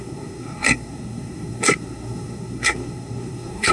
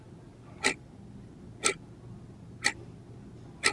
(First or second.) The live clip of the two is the second